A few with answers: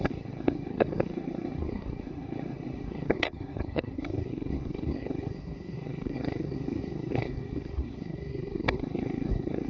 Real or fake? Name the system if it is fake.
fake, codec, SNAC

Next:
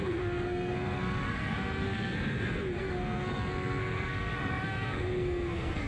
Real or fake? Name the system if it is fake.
fake, codec, SNAC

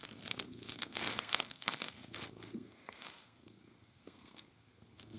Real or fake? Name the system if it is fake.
fake, codec, SNAC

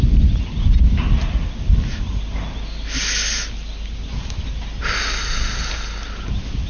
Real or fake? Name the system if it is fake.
real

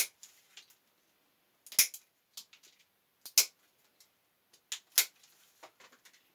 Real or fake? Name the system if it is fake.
real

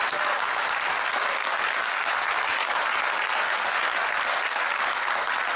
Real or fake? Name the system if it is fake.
real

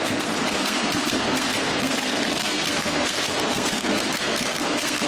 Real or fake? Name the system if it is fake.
fake, codec, SNAC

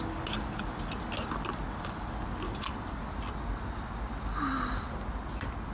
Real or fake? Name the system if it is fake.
real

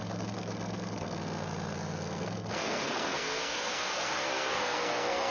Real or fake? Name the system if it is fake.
fake, codec, SNAC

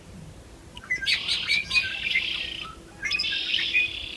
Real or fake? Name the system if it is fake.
real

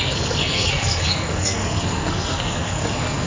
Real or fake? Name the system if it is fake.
fake, codec, SNAC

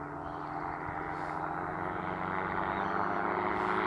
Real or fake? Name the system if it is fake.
real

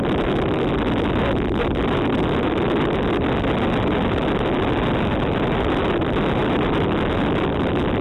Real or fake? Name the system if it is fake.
real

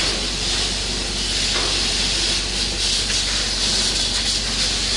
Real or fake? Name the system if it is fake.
real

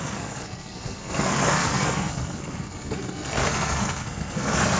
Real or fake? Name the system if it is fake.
fake, codec, SNAC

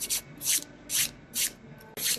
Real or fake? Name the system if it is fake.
real